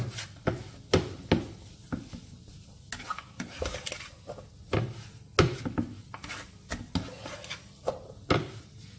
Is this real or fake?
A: real